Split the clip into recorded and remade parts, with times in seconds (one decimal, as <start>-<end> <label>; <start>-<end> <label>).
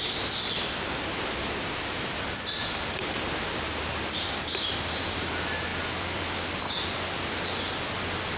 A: 0.0-5.7 recorded; 5.7-6.4 remade; 6.4-8.4 recorded